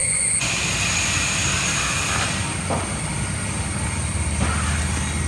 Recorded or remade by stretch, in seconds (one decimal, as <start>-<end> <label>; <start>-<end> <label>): 0.0-0.5 remade; 0.5-5.3 recorded